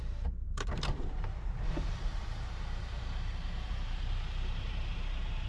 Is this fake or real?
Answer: fake